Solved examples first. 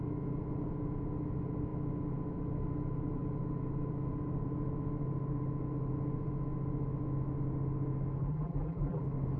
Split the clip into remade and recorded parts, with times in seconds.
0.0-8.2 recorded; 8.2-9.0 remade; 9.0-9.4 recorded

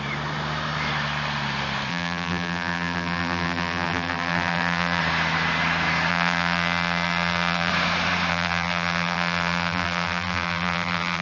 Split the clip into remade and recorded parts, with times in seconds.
0.0-1.9 recorded; 1.9-5.0 remade; 5.0-6.1 recorded; 6.1-7.7 remade; 7.7-8.3 recorded; 8.3-11.2 remade

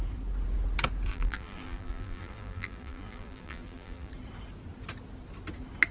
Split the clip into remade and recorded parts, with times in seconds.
0.0-1.1 recorded; 1.1-4.1 remade; 4.1-5.9 recorded

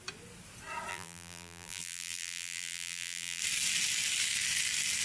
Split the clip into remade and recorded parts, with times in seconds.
0.0-0.9 recorded; 0.9-3.4 remade; 3.4-5.0 recorded

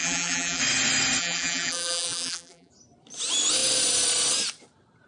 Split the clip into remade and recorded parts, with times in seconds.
0.0-0.6 remade; 0.6-1.2 recorded; 1.2-2.7 remade; 2.7-5.1 recorded

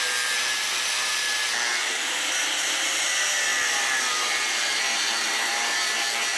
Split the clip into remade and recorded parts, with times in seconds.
0.0-1.7 recorded; 1.7-2.5 remade; 2.5-3.5 recorded; 3.5-5.9 remade; 5.9-6.4 recorded